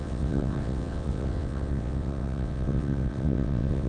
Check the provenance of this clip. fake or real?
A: fake